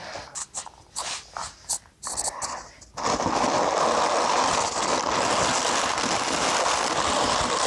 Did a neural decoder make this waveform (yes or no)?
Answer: no